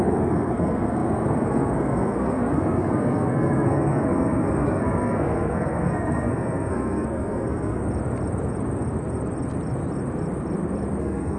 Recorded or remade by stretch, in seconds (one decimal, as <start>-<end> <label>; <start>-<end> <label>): 0.0-7.8 remade; 7.8-11.0 recorded; 11.0-11.4 remade

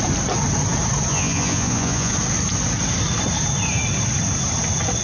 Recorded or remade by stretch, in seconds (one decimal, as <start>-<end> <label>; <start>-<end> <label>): 0.0-1.1 recorded; 1.1-2.1 remade; 2.1-5.0 recorded

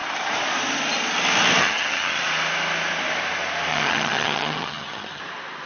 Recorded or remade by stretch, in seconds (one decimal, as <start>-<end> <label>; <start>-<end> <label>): 0.0-1.6 recorded; 1.6-2.2 remade; 2.2-3.7 recorded; 3.7-5.2 remade; 5.2-5.7 recorded

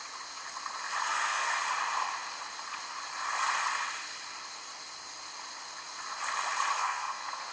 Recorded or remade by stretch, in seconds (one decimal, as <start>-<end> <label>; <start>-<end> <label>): 0.0-1.0 recorded; 1.0-1.6 remade; 1.6-6.7 recorded; 6.7-7.5 remade

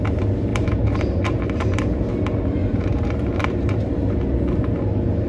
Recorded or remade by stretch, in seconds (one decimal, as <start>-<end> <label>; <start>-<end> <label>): 0.0-0.5 recorded; 0.5-2.1 remade; 2.1-2.6 recorded; 2.6-4.1 remade; 4.1-5.3 recorded

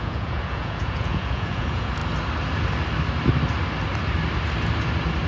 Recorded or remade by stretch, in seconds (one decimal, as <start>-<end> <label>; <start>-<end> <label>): 0.0-2.0 remade; 2.0-5.3 recorded

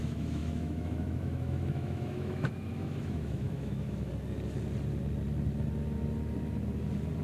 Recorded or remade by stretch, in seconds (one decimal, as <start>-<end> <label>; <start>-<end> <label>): 0.0-4.1 remade; 4.1-7.2 recorded